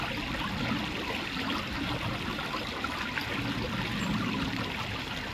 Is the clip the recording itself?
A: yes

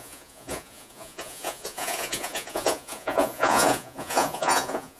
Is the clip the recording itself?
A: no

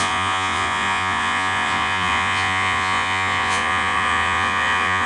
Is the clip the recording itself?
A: no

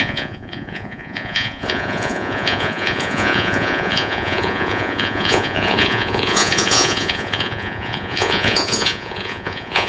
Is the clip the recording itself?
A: no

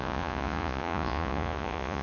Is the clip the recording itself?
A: no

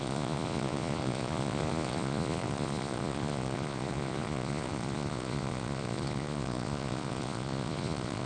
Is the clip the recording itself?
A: no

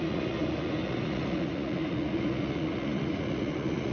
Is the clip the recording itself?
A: no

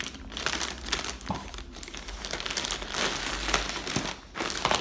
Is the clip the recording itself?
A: yes